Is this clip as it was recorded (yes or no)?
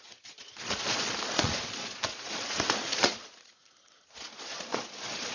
no